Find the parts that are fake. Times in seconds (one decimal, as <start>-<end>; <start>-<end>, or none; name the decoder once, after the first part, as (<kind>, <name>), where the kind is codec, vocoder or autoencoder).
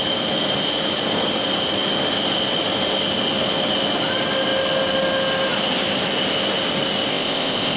7.1-7.8 (codec, ZipCodec)